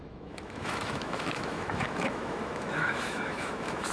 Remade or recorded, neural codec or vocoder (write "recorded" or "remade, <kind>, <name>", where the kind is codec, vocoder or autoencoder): remade, autoencoder, DAC-VAE